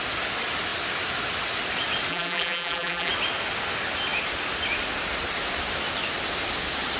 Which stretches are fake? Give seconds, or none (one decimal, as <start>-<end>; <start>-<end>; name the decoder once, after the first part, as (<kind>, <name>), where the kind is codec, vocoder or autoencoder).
2.1-3.1 (vocoder, BigVGAN v2)